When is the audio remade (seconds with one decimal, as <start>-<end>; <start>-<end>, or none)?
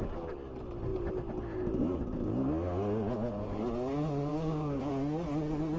4.3-4.9